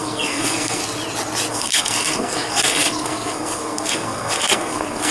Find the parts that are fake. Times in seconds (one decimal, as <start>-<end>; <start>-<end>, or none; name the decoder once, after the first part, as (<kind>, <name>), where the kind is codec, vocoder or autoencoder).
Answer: 0.0-0.8 (codec, SNAC); 1.5-5.1